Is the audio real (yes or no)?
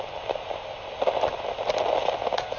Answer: yes